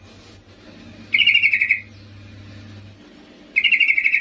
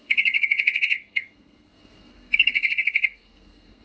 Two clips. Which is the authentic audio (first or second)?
first